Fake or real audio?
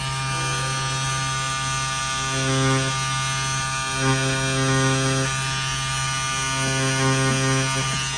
real